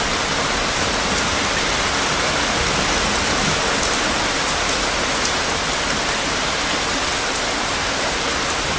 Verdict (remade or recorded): recorded